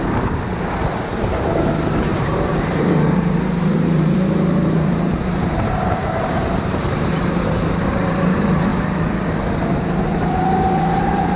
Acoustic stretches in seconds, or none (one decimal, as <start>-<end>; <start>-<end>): 8.7-9.7